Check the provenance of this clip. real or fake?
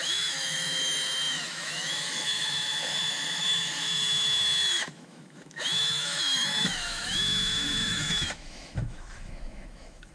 fake